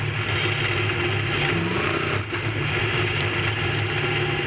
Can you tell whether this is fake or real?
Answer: real